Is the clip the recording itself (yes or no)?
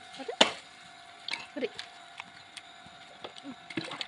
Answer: yes